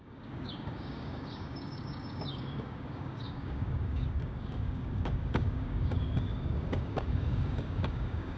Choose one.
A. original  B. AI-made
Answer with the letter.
B